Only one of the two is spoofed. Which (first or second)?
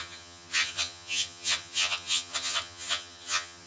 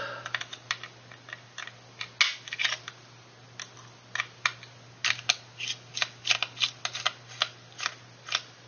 first